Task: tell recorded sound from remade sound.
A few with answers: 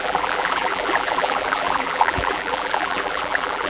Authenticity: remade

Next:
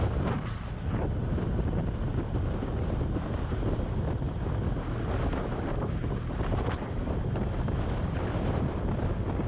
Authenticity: recorded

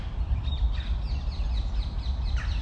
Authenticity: recorded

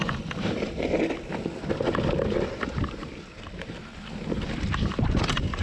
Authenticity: recorded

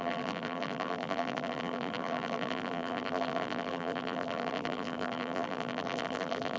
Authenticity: remade